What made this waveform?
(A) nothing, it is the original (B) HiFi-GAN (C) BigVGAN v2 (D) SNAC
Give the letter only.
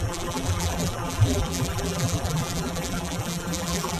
C